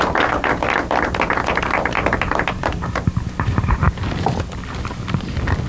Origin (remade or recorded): recorded